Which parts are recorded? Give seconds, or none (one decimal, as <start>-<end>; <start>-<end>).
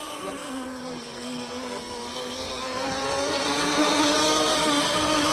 none